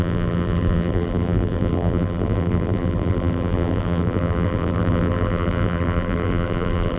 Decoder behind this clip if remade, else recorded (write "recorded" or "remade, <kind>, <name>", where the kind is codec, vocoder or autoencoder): remade, vocoder, BigVGAN v2